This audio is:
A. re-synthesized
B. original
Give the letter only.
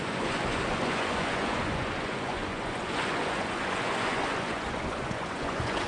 A